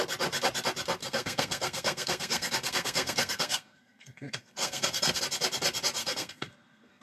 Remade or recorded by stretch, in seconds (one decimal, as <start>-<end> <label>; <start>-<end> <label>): 0.0-1.0 recorded; 1.0-5.2 remade; 5.2-6.0 recorded; 6.0-7.0 remade